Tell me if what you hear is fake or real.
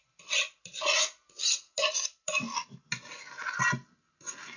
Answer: real